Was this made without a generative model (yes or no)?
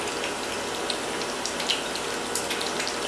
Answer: yes